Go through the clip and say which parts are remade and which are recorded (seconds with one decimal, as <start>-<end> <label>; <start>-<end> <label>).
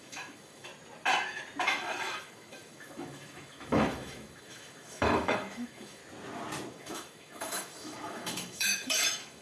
0.0-0.7 remade; 0.7-1.7 recorded; 1.7-6.0 remade; 6.0-6.7 recorded; 6.7-9.4 remade